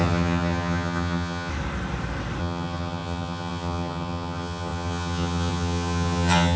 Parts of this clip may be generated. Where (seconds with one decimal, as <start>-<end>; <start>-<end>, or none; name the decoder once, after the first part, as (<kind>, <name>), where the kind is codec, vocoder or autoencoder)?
0.0-1.5 (vocoder, HiFi-GAN); 2.4-6.6